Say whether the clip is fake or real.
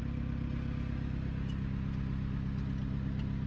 real